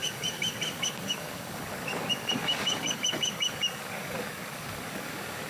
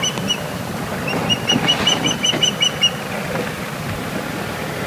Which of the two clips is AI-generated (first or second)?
first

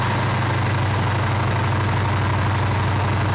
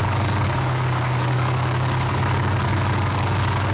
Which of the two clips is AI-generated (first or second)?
second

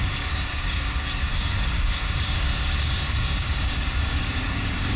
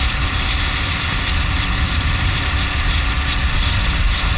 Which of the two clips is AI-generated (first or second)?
first